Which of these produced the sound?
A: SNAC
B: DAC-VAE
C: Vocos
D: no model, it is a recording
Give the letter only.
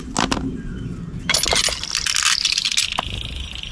D